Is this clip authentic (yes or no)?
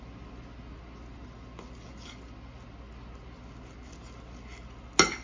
yes